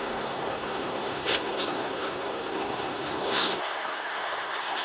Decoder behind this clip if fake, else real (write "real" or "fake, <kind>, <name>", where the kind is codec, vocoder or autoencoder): fake, codec, SNAC